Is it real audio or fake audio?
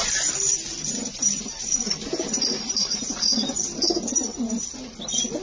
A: real